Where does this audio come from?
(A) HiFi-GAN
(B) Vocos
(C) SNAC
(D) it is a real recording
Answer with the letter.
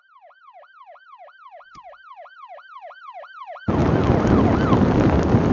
D